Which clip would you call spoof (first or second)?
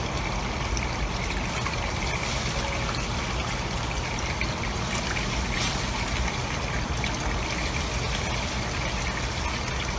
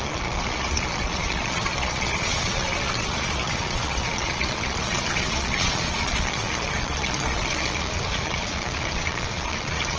second